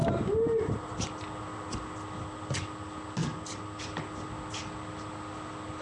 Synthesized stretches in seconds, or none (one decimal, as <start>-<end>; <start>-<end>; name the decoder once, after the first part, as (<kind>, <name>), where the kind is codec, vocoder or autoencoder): none